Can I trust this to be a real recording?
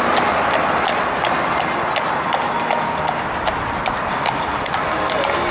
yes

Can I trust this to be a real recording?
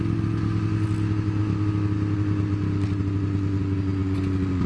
yes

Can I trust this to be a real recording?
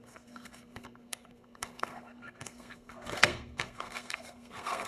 no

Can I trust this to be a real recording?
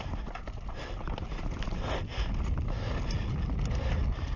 yes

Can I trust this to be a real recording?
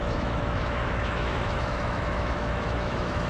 no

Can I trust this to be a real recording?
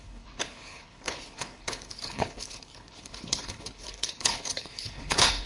no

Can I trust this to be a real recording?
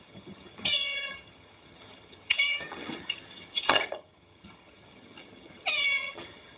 no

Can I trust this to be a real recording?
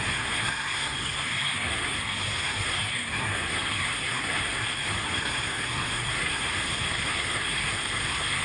no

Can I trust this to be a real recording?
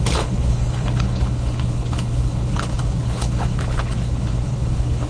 no